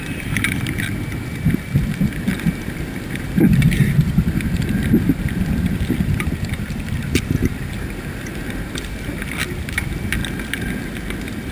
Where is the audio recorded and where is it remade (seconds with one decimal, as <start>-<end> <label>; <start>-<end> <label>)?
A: 0.0-10.2 remade; 10.2-11.5 recorded